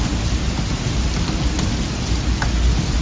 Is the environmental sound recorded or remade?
recorded